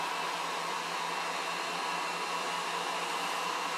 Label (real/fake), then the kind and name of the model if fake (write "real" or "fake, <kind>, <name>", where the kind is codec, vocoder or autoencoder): real